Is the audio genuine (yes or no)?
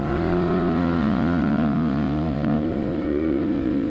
no